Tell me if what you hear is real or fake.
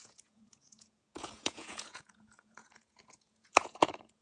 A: fake